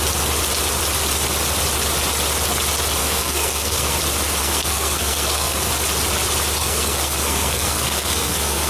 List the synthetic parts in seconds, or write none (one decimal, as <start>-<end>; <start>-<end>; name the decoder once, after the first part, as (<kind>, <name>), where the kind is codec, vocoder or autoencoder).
3.0-4.0 (codec, SNAC); 4.4-5.7; 6.6-8.7